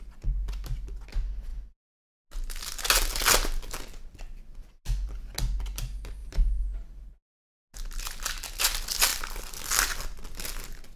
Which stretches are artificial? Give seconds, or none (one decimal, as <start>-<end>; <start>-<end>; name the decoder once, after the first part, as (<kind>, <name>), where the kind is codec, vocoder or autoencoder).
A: none